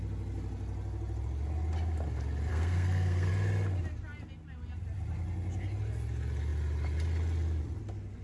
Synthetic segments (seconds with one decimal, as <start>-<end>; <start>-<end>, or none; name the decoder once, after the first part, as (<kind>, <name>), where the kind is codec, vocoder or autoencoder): 2.5-3.3 (codec, SNAC)